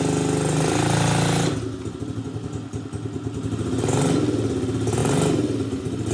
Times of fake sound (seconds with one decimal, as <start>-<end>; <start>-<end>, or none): none